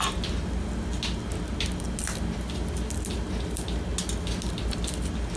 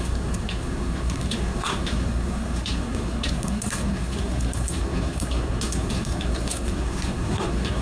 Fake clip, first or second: second